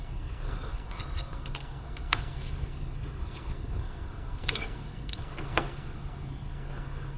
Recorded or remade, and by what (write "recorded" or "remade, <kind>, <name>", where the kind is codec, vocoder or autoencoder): remade, codec, SNAC